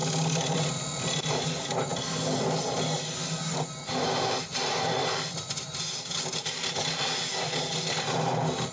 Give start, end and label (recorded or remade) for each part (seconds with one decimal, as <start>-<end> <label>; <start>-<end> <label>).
0.0-1.3 remade; 1.3-5.0 recorded; 5.0-6.7 remade; 6.7-8.7 recorded